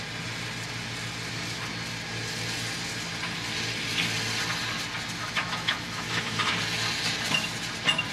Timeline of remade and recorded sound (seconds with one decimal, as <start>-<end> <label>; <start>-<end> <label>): 0.0-5.2 recorded; 5.2-6.5 remade; 6.5-8.1 recorded